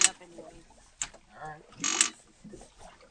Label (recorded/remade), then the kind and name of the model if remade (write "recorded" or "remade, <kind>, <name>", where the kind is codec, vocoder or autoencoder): recorded